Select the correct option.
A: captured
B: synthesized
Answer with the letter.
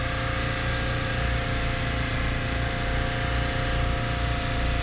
A